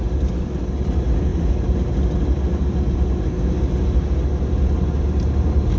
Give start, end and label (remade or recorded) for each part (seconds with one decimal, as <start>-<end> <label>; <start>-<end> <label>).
0.0-5.8 recorded